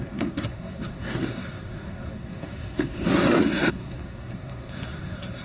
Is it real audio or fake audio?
fake